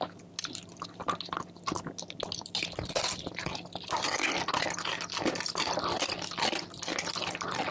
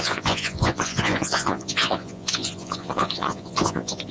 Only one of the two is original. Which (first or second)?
first